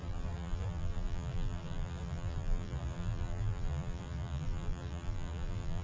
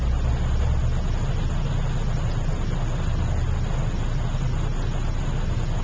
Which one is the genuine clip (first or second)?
second